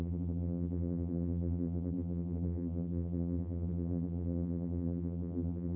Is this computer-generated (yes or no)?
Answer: yes